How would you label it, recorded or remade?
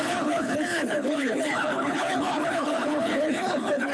remade